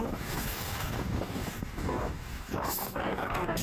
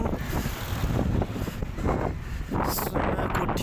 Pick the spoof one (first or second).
first